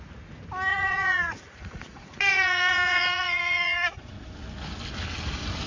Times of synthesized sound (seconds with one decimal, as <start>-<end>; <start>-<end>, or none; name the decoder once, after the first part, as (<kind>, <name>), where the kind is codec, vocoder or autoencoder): 0.7-4.1 (vocoder, Vocos)

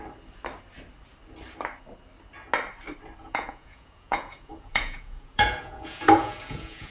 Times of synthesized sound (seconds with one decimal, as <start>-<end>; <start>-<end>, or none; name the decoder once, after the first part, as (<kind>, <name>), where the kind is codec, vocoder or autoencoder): 3.2-6.9 (vocoder, Vocos)

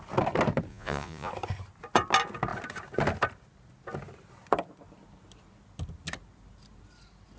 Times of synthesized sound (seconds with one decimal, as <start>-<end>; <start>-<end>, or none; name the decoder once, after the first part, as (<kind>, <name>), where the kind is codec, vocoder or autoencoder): 0.7-1.3 (vocoder, Vocos)